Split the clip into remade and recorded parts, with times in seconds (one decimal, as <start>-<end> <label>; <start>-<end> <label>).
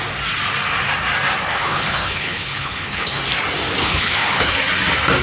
0.0-1.5 recorded; 1.5-3.2 remade; 3.2-3.8 recorded; 3.8-4.5 remade; 4.5-5.2 recorded